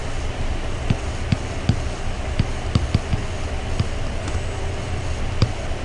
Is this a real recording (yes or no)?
yes